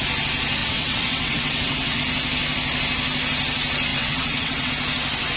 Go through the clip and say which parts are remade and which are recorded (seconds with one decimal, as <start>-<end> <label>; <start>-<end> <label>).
0.0-0.6 recorded; 0.6-2.0 remade; 2.0-3.9 recorded; 3.9-4.7 remade; 4.7-5.4 recorded